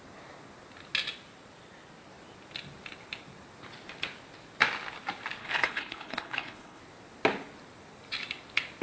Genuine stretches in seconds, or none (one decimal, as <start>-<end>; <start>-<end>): 0.0-5.4; 6.8-8.8